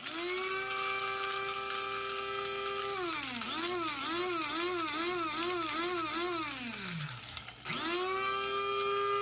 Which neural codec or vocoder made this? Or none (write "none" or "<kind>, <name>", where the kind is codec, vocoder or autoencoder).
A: none